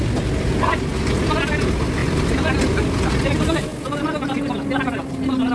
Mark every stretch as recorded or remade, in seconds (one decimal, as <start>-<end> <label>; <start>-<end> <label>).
0.0-5.5 recorded